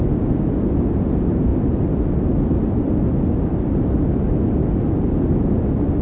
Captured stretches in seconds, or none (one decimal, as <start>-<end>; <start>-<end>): 0.0-6.0